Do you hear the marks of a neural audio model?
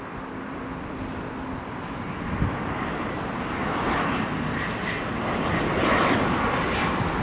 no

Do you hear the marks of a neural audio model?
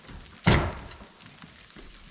no